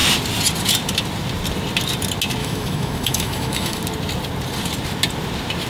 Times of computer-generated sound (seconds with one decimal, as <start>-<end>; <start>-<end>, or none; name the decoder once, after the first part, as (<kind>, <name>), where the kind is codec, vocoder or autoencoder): 2.4-3.8 (autoencoder, DAC-VAE)